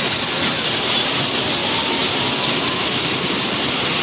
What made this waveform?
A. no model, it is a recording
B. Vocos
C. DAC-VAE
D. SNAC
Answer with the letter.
A